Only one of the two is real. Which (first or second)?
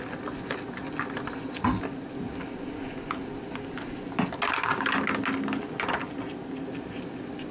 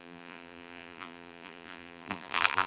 first